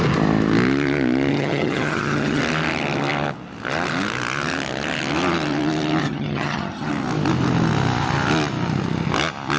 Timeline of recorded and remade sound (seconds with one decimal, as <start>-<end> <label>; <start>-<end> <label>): 0.0-1.3 recorded; 1.3-2.4 remade; 2.4-6.0 recorded; 6.0-6.9 remade; 6.9-9.6 recorded